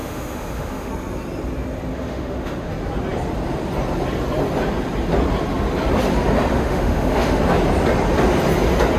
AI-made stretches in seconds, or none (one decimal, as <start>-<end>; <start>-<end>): 0.0-0.9; 1.9-2.7; 6.5-7.4